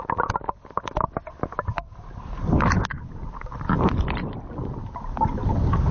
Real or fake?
real